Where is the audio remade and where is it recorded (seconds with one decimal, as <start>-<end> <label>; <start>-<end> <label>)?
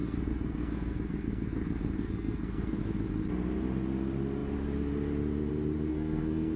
0.0-2.8 remade; 2.8-5.9 recorded; 5.9-6.6 remade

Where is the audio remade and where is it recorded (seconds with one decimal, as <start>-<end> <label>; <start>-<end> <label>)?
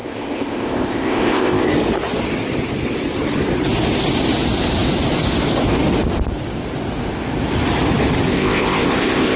0.0-1.7 remade; 1.7-8.3 recorded; 8.3-9.4 remade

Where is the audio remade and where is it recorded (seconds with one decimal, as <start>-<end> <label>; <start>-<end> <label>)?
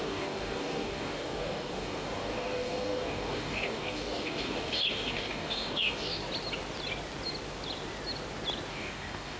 0.0-6.2 remade; 6.2-8.7 recorded; 8.7-9.4 remade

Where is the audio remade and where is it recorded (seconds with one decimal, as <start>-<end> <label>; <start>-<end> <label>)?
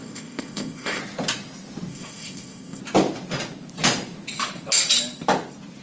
0.0-1.0 remade; 1.0-1.9 recorded; 1.9-2.8 remade; 2.8-5.8 recorded